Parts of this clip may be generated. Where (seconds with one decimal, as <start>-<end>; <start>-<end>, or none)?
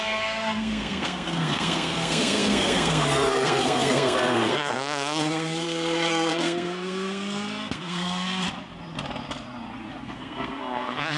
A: 0.0-8.4; 10.0-11.2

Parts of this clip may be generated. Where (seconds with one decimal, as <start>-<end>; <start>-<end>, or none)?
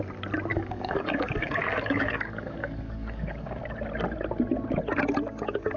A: 0.5-3.6